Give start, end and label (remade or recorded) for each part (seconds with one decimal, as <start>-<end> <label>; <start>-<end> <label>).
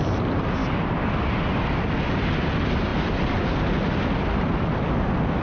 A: 0.0-5.4 recorded